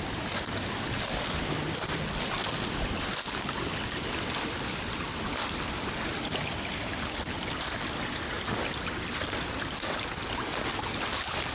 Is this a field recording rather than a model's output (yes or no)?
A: yes